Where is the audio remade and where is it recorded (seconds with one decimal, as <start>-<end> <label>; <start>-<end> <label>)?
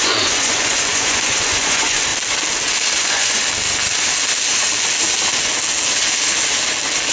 0.0-2.1 remade; 2.1-3.0 recorded; 3.0-3.4 remade; 3.4-7.1 recorded